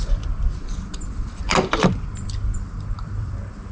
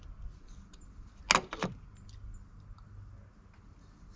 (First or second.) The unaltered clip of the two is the second